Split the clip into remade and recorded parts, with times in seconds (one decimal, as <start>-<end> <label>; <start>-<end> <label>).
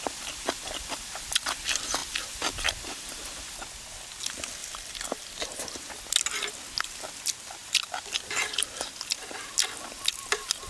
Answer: 0.0-2.0 recorded; 2.0-3.1 remade; 3.1-4.6 recorded; 4.6-5.9 remade; 5.9-10.7 recorded